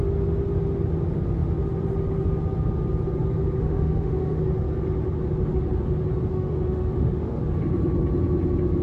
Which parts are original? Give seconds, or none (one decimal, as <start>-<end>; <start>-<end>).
0.0-3.6; 4.4-6.3; 7.4-8.8